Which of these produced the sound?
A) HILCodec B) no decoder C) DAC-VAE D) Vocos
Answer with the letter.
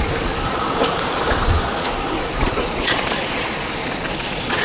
D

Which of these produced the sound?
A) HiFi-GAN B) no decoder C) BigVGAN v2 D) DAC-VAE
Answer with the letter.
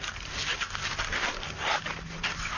B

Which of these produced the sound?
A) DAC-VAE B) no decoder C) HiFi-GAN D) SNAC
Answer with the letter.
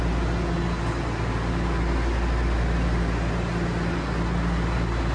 B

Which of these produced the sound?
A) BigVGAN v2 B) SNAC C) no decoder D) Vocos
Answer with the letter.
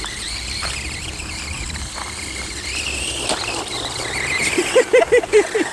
C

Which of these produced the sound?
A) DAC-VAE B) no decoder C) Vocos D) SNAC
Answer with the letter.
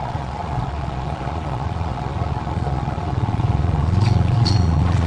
C